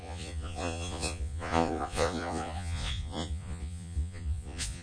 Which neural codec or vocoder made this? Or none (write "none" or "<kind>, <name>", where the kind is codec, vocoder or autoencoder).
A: vocoder, Vocos